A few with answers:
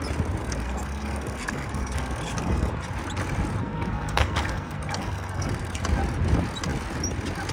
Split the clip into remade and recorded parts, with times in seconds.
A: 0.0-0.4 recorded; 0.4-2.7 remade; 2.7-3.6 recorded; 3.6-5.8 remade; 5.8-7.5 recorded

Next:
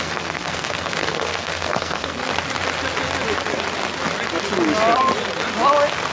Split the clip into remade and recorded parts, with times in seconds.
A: 0.0-2.2 remade; 2.2-6.1 recorded

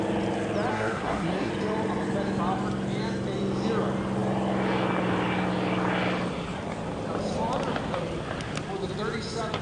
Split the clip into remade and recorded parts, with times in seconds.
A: 0.0-0.7 recorded; 0.7-1.5 remade; 1.5-9.6 recorded

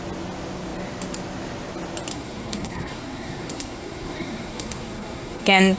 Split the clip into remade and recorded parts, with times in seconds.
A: 0.0-2.1 recorded; 2.1-5.8 remade

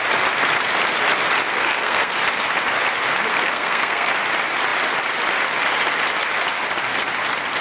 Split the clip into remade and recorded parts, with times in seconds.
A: 0.0-1.5 recorded; 1.5-2.1 remade; 2.1-3.3 recorded; 3.3-4.1 remade; 4.1-7.6 recorded

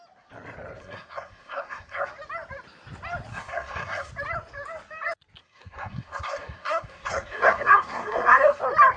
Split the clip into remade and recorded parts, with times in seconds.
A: 0.0-0.8 recorded; 0.8-2.1 remade; 2.1-3.3 recorded; 3.3-4.1 remade; 4.1-5.4 recorded; 5.4-8.6 remade; 8.6-9.0 recorded

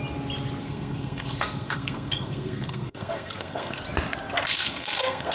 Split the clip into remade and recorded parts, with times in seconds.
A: 0.0-0.6 recorded; 0.6-3.8 remade; 3.8-4.5 recorded; 4.5-5.3 remade

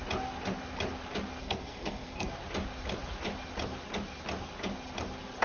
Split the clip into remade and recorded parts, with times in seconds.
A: 0.0-1.4 recorded; 1.4-2.3 remade; 2.3-5.4 recorded